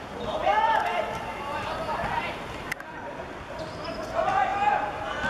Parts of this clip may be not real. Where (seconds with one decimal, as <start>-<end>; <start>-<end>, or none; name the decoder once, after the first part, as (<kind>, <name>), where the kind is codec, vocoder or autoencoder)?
0.4-3.6 (vocoder, BigVGAN v2)